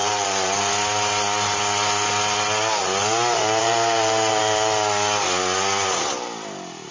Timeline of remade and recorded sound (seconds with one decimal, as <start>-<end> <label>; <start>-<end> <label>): 0.0-0.7 remade; 0.7-3.6 recorded; 3.6-4.4 remade; 4.4-6.9 recorded